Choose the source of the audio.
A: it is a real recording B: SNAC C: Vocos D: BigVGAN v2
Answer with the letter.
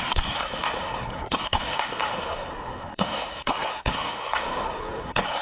B